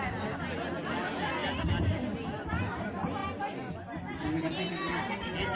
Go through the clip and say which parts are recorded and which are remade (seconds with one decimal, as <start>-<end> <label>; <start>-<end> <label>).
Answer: 0.0-5.6 recorded